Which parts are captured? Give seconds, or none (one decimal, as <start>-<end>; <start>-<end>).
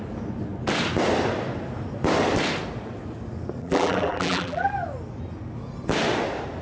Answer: 0.0-3.6; 4.7-6.6